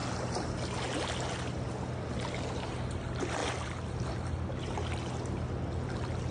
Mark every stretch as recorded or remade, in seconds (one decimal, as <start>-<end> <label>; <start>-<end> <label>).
0.0-6.3 recorded